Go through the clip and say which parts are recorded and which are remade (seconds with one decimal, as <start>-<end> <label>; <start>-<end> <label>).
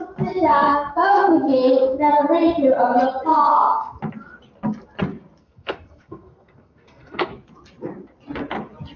0.0-0.5 recorded; 0.5-2.1 remade; 2.1-3.3 recorded; 3.3-4.0 remade; 4.0-5.4 recorded; 5.4-7.3 remade; 7.3-9.0 recorded